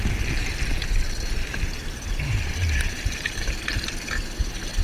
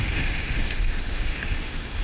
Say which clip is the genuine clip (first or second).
first